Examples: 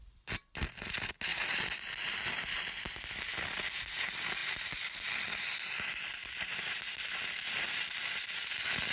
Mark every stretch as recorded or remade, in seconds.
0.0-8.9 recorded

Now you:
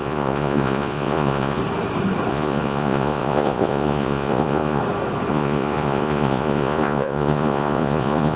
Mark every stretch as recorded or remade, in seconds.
0.0-1.6 remade; 1.6-2.3 recorded; 2.3-4.8 remade; 4.8-5.3 recorded; 5.3-8.4 remade

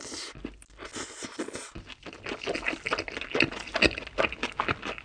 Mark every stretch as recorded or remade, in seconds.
0.0-5.0 recorded

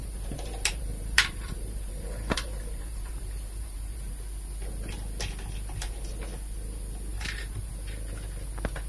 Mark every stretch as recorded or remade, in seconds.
0.0-4.1 remade; 4.1-7.1 recorded; 7.1-7.7 remade; 7.7-8.9 recorded

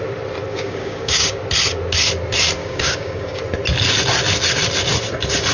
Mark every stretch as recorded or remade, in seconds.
0.0-0.5 recorded; 0.5-1.4 remade; 1.4-2.6 recorded; 2.6-3.4 remade; 3.4-5.5 recorded

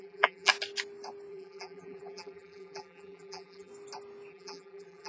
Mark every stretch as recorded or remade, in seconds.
0.0-0.5 remade; 0.5-1.3 recorded; 1.3-3.7 remade; 3.7-4.3 recorded; 4.3-5.1 remade

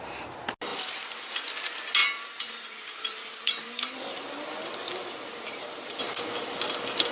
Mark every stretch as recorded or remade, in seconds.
0.0-2.0 recorded; 2.0-6.0 remade; 6.0-7.1 recorded